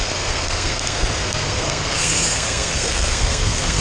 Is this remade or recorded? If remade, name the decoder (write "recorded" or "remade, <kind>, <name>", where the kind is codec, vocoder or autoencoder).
remade, codec, SNAC